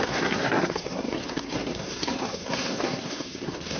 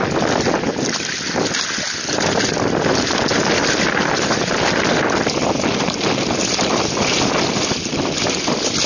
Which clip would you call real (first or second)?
second